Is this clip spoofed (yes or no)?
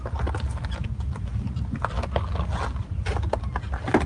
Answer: no